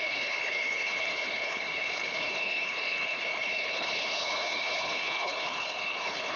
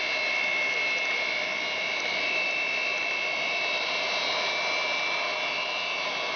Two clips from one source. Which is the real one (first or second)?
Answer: second